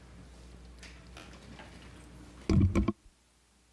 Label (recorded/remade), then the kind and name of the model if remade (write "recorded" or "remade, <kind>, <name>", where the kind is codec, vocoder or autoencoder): recorded